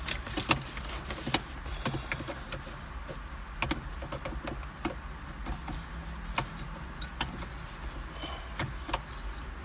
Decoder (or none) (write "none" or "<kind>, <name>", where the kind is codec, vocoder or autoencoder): none